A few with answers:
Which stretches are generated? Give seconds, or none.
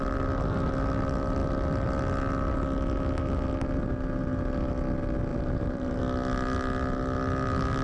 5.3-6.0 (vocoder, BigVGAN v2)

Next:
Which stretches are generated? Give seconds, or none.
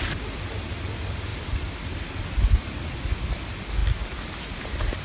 none